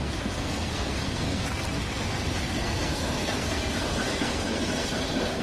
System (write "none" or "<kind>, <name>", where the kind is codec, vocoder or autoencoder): codec, SNAC